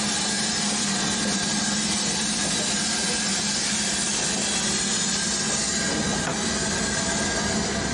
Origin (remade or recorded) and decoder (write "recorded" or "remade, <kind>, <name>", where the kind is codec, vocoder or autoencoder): recorded